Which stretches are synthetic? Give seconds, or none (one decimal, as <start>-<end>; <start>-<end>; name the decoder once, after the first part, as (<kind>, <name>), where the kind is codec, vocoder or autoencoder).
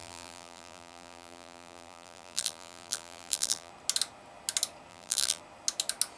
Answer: 0.0-3.7 (vocoder, BigVGAN v2); 4.9-5.4